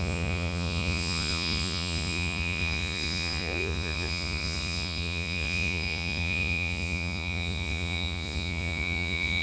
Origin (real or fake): fake